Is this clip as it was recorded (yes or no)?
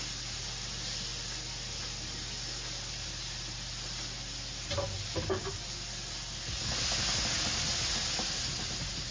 yes